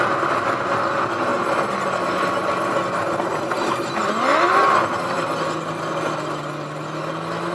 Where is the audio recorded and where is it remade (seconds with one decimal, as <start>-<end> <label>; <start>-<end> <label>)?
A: 0.0-7.5 recorded